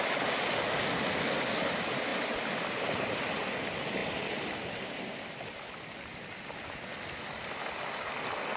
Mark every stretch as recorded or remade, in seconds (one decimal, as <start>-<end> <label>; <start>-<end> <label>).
0.0-8.6 recorded